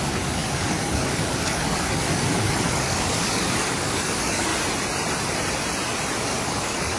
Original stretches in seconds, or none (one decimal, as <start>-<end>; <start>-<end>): 4.5-6.2